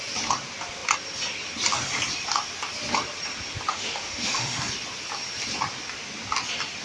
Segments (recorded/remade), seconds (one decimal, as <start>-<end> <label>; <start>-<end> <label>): 0.0-3.7 recorded; 3.7-4.6 remade; 4.6-6.8 recorded